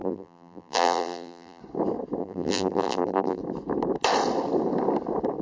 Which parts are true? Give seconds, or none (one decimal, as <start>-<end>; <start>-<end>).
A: 1.6-2.2; 3.4-5.4